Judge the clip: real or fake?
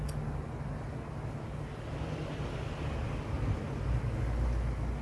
real